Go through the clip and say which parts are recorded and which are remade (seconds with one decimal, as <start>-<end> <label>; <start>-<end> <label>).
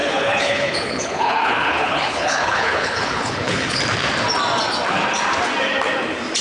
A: 0.0-3.8 remade; 3.8-6.4 recorded